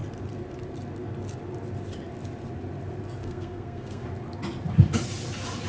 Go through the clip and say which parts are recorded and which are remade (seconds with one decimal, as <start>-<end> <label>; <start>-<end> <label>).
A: 0.0-3.2 recorded; 3.2-4.0 remade; 4.0-5.7 recorded